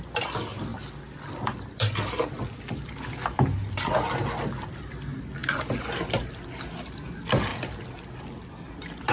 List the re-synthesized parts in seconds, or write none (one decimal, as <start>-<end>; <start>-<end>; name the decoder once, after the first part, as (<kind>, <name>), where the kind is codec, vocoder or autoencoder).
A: none